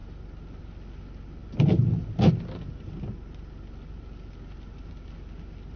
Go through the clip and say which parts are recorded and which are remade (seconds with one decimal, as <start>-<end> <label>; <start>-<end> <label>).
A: 0.0-0.6 remade; 0.6-5.8 recorded